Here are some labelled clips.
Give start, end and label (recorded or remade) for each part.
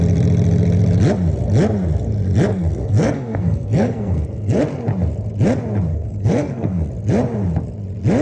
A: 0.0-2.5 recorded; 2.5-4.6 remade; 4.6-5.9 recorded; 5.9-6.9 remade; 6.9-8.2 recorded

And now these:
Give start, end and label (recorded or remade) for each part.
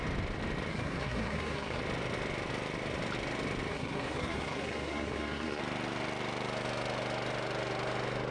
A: 0.0-0.7 recorded; 0.7-1.8 remade; 1.8-3.7 recorded; 3.7-5.6 remade; 5.6-8.3 recorded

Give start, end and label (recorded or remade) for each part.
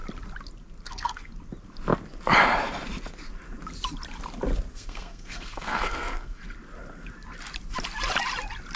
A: 0.0-0.8 recorded; 0.8-1.3 remade; 1.3-4.7 recorded; 4.7-6.4 remade; 6.4-8.8 recorded